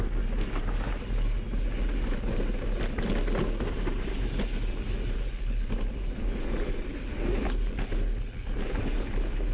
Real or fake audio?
real